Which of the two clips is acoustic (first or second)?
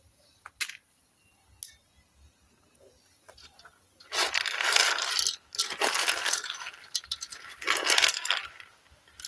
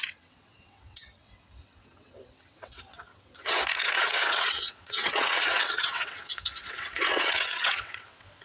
first